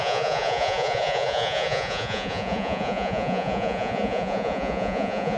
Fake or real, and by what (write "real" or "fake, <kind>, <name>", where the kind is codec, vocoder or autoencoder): fake, vocoder, Vocos